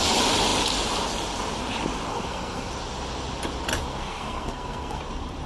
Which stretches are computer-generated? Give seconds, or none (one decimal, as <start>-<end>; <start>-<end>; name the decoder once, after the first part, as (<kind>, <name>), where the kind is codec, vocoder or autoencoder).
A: 2.1-2.7 (codec, SNAC); 3.9-5.0